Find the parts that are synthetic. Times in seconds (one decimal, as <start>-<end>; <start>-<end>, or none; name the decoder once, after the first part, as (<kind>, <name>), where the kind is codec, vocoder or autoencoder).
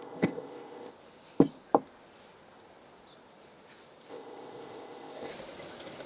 0.0-0.9 (codec, ZipCodec); 4.1-5.3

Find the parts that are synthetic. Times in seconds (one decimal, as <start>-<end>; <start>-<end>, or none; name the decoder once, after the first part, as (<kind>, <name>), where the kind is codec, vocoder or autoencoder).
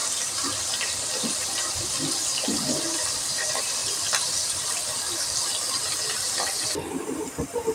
3.4-3.8 (vocoder, BigVGAN v2); 7.3-7.7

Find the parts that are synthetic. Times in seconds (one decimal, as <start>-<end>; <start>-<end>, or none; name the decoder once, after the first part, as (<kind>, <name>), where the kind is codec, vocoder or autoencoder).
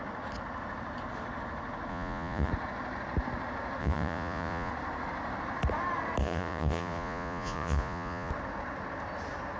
1.9-2.5 (vocoder, Vocos); 3.8-4.7; 6.2-8.3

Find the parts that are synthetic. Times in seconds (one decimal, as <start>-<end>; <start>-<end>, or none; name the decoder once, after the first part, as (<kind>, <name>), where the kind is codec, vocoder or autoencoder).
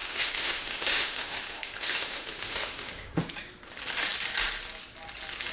0.0-3.2 (autoencoder, DAC-VAE)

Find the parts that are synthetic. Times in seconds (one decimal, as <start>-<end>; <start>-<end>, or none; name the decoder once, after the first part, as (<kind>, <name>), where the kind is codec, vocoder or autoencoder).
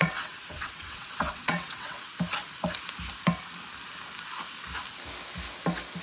0.0-2.1 (vocoder, WaveNeXt)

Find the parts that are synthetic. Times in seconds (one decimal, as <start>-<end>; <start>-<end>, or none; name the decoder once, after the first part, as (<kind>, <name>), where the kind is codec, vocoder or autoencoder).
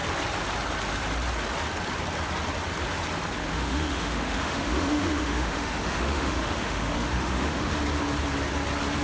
3.5-7.7 (autoencoder, DAC-VAE)